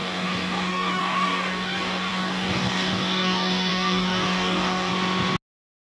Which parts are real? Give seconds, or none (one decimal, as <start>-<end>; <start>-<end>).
4.9-5.8